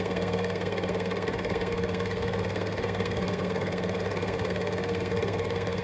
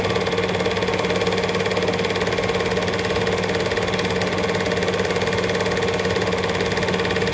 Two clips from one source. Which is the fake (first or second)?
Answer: first